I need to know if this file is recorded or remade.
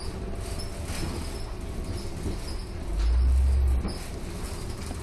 recorded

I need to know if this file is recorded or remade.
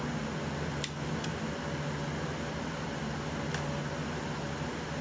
recorded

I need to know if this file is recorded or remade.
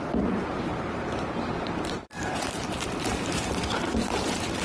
remade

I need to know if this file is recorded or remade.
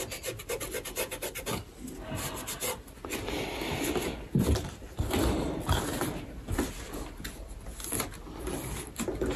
recorded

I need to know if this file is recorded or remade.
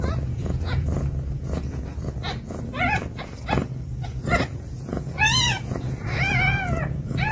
remade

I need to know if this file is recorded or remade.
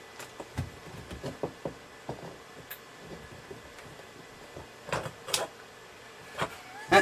remade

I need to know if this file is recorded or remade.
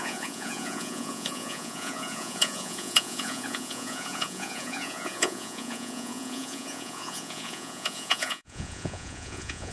remade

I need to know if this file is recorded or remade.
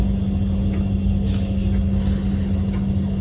recorded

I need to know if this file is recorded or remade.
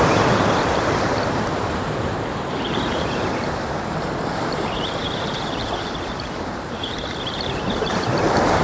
remade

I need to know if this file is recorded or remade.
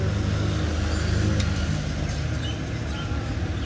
recorded